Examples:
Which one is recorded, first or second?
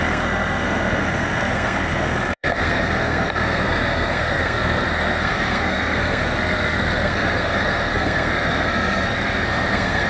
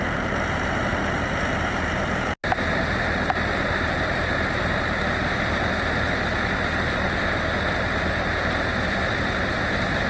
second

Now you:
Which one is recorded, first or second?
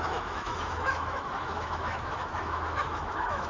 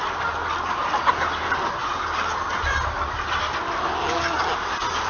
second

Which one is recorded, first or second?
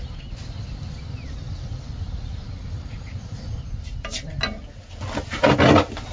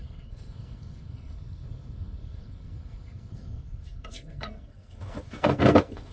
first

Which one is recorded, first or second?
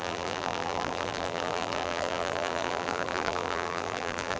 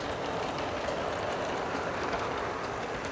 second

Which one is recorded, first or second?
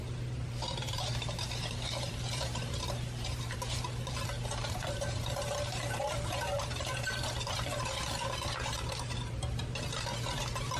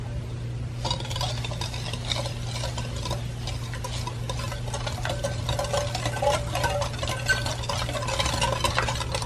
second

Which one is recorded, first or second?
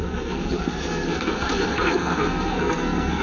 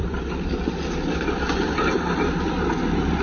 second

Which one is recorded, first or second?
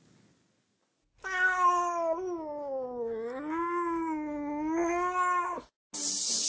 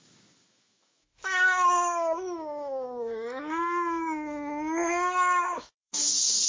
first